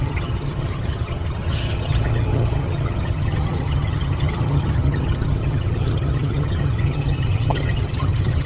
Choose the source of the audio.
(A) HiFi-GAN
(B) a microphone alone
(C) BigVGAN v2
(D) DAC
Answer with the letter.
A